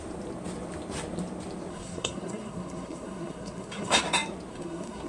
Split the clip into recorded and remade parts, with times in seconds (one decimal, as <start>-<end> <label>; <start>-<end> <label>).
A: 0.0-1.7 recorded; 1.7-4.0 remade; 4.0-4.5 recorded; 4.5-5.1 remade